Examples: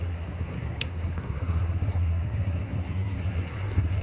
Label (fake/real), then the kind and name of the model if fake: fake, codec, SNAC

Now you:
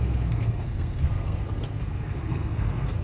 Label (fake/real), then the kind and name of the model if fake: fake, codec, SNAC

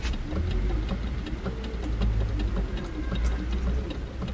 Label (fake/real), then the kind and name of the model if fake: real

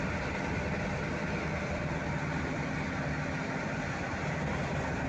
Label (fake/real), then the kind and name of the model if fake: real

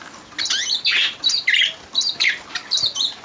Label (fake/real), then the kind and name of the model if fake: real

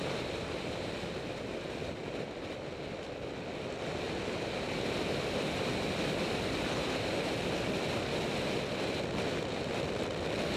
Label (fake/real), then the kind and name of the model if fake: real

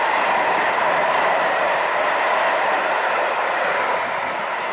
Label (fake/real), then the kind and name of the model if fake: real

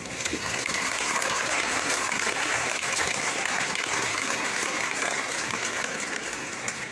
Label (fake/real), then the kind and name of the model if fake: fake, codec, SNAC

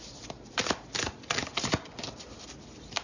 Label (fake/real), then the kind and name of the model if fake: real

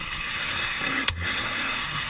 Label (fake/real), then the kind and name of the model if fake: fake, codec, SNAC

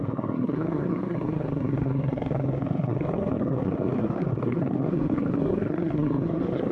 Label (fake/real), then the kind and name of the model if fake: fake, codec, SNAC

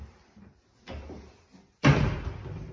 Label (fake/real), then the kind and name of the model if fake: real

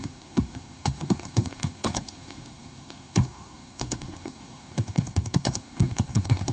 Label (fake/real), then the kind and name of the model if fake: fake, codec, SNAC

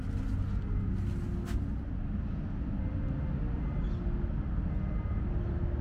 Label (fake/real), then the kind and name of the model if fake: real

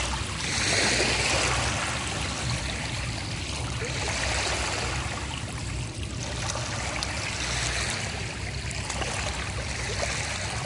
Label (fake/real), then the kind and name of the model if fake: real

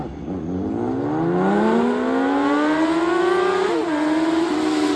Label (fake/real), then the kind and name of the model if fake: real